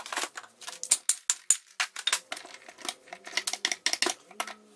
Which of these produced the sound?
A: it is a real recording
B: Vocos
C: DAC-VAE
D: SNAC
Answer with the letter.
A